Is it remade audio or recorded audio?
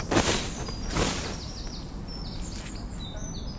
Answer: recorded